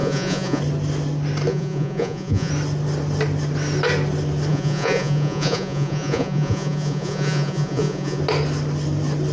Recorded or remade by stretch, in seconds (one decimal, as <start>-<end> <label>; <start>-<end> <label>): 0.0-0.6 remade; 0.6-1.5 recorded; 1.5-2.5 remade; 2.5-4.5 recorded; 4.5-8.2 remade; 8.2-9.3 recorded

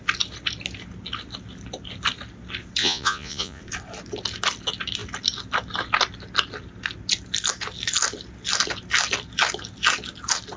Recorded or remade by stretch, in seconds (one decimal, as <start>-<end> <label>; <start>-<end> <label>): 0.0-2.8 recorded; 2.8-3.6 remade; 3.6-10.6 recorded

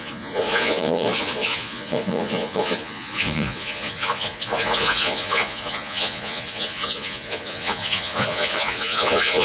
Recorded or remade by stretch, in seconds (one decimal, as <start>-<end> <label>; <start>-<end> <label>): 0.0-9.4 remade

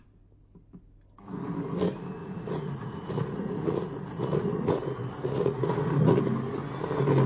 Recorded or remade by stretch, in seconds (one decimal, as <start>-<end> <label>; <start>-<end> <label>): 0.0-2.2 recorded; 2.2-6.2 remade; 6.2-7.3 recorded